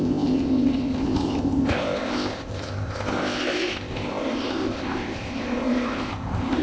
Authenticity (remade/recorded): remade